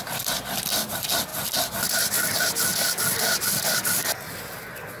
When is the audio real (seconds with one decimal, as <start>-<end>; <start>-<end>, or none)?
0.0-5.0

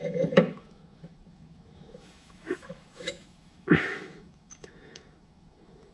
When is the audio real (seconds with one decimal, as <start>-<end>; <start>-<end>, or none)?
none

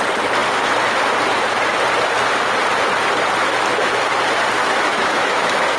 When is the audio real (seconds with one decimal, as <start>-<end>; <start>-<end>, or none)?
0.0-4.6

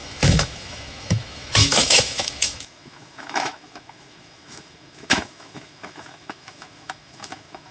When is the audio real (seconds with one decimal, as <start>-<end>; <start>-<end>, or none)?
none

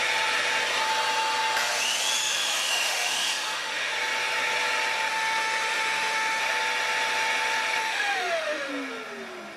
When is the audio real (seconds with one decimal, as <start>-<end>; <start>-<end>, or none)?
0.0-2.2; 3.9-5.1; 6.4-7.8; 8.7-9.6

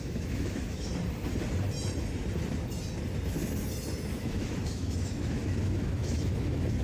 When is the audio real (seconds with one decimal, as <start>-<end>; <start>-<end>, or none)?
0.9-4.1